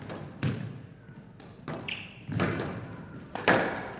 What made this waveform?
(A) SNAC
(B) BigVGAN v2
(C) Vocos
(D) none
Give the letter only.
B